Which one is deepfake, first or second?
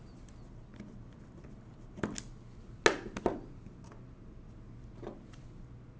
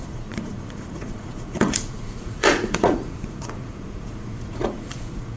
second